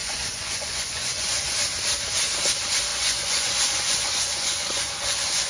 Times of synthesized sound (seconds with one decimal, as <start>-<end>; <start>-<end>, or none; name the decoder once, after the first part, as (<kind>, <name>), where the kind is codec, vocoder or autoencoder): 0.0-1.6 (vocoder, Vocos); 2.9-5.5